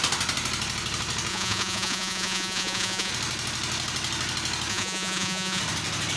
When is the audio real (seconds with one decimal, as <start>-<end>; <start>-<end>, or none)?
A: 0.0-1.3; 3.1-4.7; 5.6-6.2